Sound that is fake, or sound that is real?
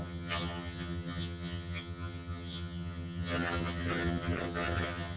fake